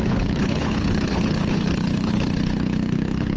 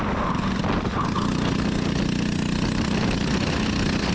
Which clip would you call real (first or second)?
second